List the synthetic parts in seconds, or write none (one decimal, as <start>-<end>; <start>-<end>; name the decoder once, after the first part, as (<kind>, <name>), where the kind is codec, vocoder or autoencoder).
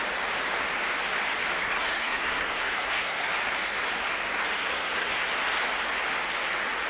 1.6-3.3 (codec, SNAC); 4.6-5.3